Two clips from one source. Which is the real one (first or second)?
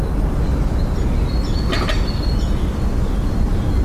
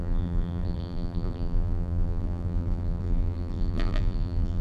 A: first